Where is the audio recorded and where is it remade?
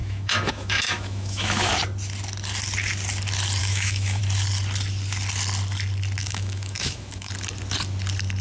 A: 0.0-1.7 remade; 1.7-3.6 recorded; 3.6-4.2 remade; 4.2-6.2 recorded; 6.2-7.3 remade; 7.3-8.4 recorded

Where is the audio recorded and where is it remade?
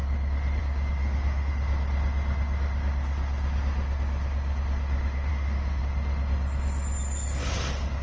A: 0.0-1.0 recorded; 1.0-1.5 remade; 1.5-5.3 recorded; 5.3-5.8 remade; 5.8-8.0 recorded